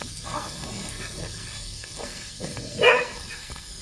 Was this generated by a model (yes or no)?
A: yes